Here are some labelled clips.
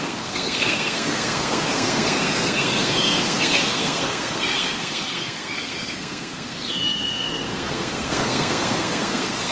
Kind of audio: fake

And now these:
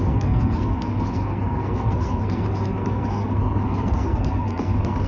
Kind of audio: fake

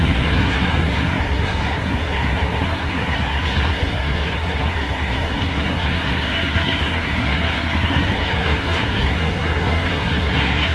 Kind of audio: fake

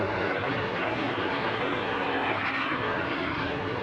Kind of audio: fake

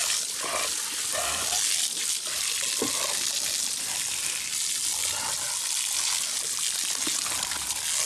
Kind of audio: real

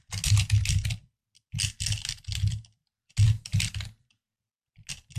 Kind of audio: real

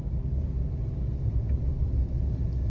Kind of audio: real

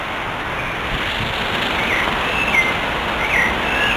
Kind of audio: real